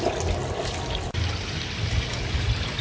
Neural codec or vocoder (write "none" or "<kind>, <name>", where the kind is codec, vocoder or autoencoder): none